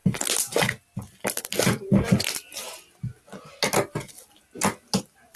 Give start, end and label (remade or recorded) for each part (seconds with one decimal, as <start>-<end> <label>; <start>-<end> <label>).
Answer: 0.0-1.4 recorded; 1.4-1.9 remade; 1.9-5.4 recorded